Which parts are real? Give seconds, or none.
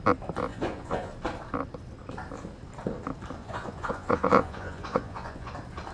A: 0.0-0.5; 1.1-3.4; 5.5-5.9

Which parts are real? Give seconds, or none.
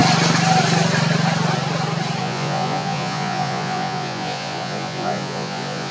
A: 0.0-2.2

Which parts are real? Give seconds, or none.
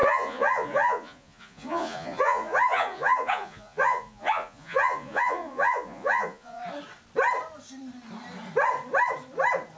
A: 6.6-9.8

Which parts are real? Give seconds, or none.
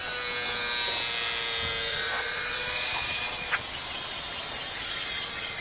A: 0.0-1.9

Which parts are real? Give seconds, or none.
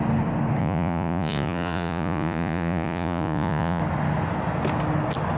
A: 0.0-0.6; 3.8-5.4